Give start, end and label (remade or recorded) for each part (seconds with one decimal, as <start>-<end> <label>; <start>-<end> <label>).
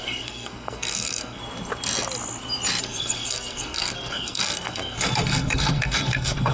0.0-1.4 remade; 1.4-2.8 recorded; 2.8-6.5 remade